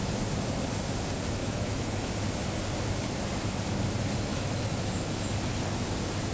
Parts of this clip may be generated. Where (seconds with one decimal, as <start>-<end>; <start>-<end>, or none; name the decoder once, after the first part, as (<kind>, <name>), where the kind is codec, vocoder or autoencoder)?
1.4-2.1 (autoencoder, DAC-VAE); 4.3-4.8